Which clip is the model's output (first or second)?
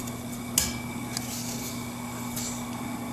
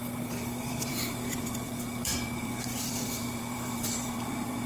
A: second